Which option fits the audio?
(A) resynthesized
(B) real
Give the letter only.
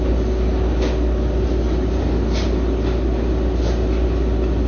B